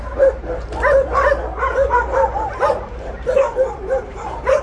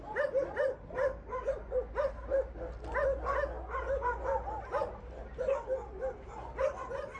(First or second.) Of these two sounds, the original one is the second